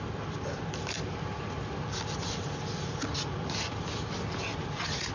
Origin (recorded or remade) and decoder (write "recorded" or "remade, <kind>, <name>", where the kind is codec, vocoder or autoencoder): recorded